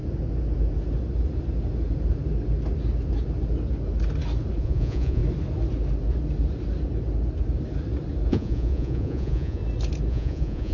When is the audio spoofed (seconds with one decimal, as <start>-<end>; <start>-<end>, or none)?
4.6-5.2; 8.3-9.6; 10.1-10.7